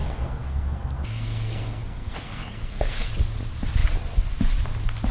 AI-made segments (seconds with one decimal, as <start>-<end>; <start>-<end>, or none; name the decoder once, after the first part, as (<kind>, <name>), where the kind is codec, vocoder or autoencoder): 0.0-3.1 (codec, SNAC)